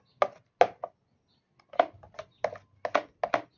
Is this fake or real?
real